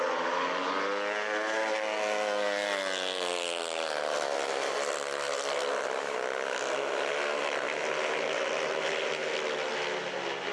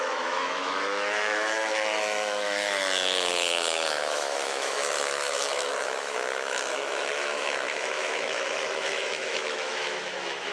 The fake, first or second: second